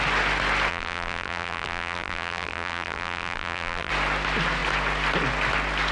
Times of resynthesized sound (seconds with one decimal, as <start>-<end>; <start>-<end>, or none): 0.7-3.9